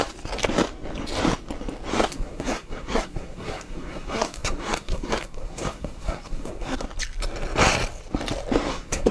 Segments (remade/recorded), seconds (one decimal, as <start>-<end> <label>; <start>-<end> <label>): 0.0-1.9 recorded; 1.9-6.9 remade; 6.9-8.7 recorded; 8.7-9.1 remade